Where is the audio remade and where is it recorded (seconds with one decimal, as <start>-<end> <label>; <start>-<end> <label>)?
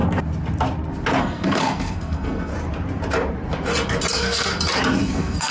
0.0-1.2 recorded; 1.2-2.5 remade; 2.5-4.1 recorded; 4.1-4.5 remade; 4.5-5.0 recorded; 5.0-5.5 remade